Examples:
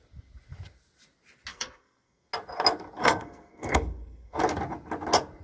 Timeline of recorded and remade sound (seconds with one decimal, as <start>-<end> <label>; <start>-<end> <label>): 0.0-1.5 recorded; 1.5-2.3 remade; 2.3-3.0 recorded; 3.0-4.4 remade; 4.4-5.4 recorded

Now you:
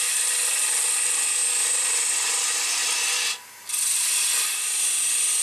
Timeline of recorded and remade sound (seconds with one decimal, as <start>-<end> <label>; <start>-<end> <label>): 0.0-5.4 recorded

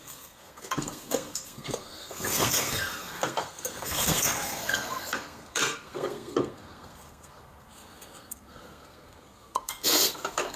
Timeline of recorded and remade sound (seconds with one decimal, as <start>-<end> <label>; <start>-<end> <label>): 0.0-10.6 remade

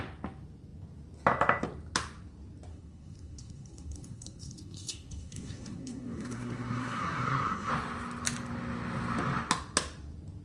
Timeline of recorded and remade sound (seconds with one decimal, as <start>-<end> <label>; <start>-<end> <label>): 0.0-2.7 recorded; 2.7-7.7 remade; 7.7-10.4 recorded

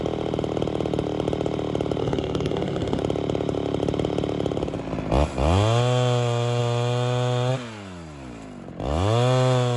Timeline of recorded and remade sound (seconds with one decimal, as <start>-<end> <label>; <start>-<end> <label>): 0.0-2.0 recorded; 2.0-3.0 remade; 3.0-9.8 recorded